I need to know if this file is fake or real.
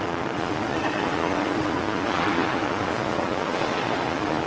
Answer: fake